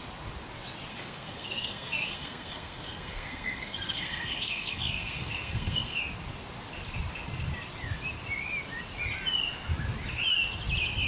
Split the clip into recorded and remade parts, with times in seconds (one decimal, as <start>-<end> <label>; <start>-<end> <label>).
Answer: 0.0-0.9 recorded; 0.9-6.0 remade; 6.0-11.1 recorded